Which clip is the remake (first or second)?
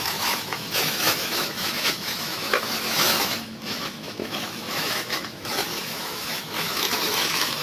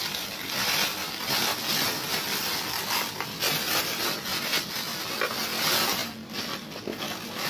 first